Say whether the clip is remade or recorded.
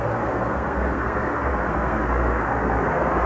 remade